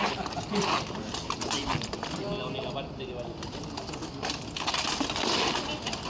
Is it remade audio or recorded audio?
recorded